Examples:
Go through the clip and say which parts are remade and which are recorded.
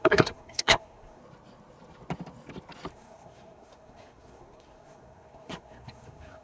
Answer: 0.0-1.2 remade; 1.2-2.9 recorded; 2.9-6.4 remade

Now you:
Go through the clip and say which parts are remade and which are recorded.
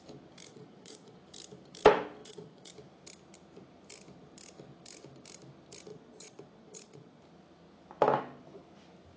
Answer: 0.0-0.5 recorded; 0.5-1.2 remade; 1.2-2.2 recorded; 2.2-2.7 remade; 2.7-5.9 recorded; 5.9-7.2 remade; 7.2-9.2 recorded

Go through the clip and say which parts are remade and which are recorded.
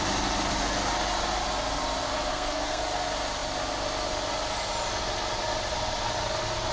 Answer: 0.0-2.3 recorded; 2.3-2.8 remade; 2.8-6.7 recorded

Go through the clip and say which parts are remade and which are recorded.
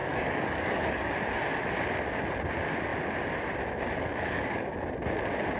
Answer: 0.0-1.1 remade; 1.1-4.1 recorded; 4.1-4.7 remade; 4.7-5.6 recorded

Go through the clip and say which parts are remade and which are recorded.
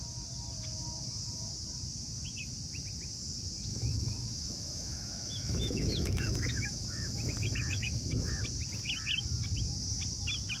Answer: 0.0-3.7 recorded; 3.7-8.3 remade; 8.3-10.6 recorded